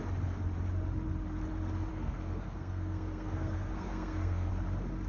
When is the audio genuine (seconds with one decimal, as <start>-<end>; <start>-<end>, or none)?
0.0-1.9; 4.5-5.1